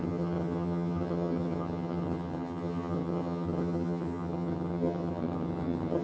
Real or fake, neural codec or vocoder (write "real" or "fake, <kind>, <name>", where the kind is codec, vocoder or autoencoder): fake, vocoder, HiFi-GAN